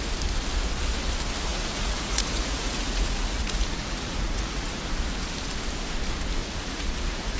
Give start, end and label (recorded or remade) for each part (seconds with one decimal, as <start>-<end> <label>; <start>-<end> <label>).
0.0-1.5 recorded; 1.5-4.8 remade; 4.8-6.4 recorded; 6.4-7.4 remade